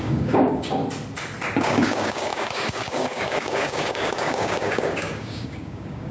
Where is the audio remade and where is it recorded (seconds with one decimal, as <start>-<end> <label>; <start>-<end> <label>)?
0.0-0.8 remade; 0.8-1.6 recorded; 1.6-6.1 remade